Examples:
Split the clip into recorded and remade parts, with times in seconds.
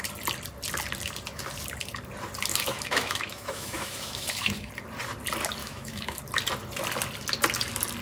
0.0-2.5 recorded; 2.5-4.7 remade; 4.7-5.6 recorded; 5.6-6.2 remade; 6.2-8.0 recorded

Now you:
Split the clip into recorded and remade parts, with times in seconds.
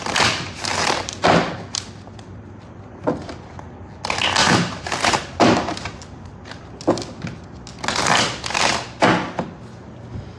0.0-0.7 recorded; 0.7-1.5 remade; 1.5-4.4 recorded; 4.4-6.6 remade; 6.6-10.4 recorded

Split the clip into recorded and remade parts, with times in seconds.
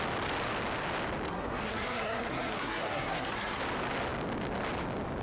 0.0-1.3 recorded; 1.3-3.6 remade; 3.6-5.2 recorded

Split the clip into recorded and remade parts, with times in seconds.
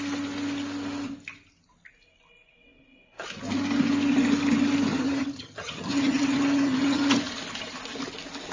0.0-4.9 recorded; 4.9-7.2 remade; 7.2-8.5 recorded